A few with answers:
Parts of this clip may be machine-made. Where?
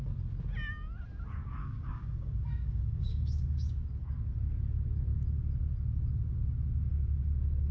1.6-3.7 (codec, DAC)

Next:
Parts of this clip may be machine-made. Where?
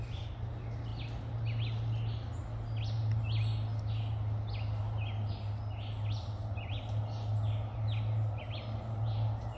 none